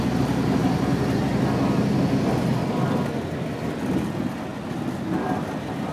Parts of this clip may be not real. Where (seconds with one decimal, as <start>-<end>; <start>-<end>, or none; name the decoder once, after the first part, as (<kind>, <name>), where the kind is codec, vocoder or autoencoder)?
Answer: none